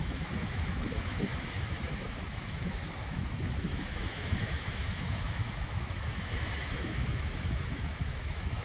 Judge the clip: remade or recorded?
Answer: remade